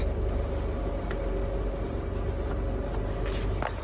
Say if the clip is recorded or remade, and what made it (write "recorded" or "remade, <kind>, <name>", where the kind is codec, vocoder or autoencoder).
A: recorded